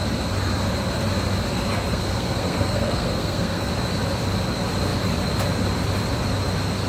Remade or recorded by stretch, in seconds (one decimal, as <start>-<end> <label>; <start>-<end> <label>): 0.0-1.9 recorded; 1.9-3.7 remade; 3.7-6.9 recorded